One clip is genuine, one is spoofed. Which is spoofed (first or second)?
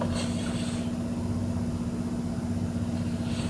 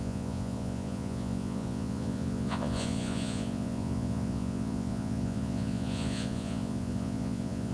second